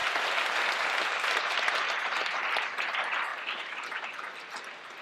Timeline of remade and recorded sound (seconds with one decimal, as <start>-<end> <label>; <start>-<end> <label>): 0.0-5.0 recorded